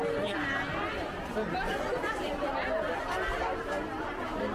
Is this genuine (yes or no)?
yes